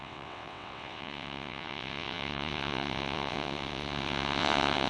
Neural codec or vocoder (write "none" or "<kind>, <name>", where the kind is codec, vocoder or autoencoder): vocoder, WaveNeXt